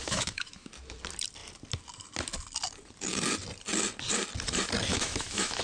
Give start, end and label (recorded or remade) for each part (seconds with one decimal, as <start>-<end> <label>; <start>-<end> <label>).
0.0-0.7 remade; 0.7-4.9 recorded; 4.9-5.6 remade